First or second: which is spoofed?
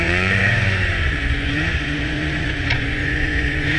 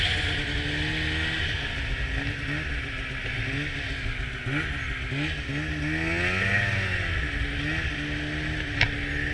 first